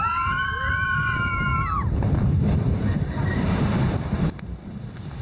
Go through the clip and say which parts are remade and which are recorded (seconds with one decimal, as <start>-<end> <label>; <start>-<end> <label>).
0.0-5.2 remade

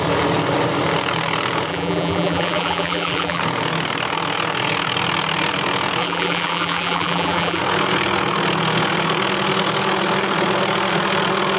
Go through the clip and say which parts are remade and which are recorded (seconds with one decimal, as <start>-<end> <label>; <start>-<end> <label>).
0.0-1.7 recorded; 1.7-3.4 remade; 3.4-6.0 recorded; 6.0-7.6 remade; 7.6-11.6 recorded

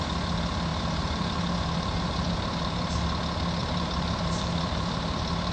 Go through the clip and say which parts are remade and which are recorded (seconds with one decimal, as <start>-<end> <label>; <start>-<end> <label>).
0.0-0.7 recorded; 0.7-2.9 remade; 2.9-3.6 recorded; 3.6-5.5 remade

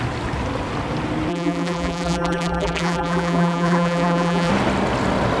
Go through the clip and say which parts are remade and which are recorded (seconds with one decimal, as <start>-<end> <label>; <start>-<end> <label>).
0.0-1.3 recorded; 1.3-4.5 remade; 4.5-5.4 recorded

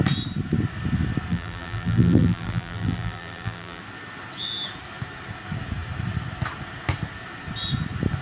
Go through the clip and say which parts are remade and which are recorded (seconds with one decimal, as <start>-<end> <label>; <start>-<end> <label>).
0.0-1.3 recorded; 1.3-3.8 remade; 3.8-8.2 recorded